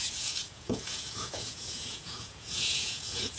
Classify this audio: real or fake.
fake